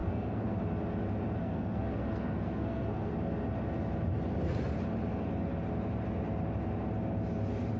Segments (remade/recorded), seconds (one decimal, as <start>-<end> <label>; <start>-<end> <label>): 0.0-0.6 remade; 0.6-1.4 recorded; 1.4-3.1 remade; 3.1-7.8 recorded